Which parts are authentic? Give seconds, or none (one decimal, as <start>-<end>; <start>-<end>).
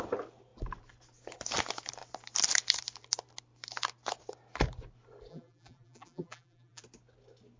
0.0-5.3; 6.8-7.6